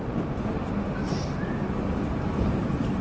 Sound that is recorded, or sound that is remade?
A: recorded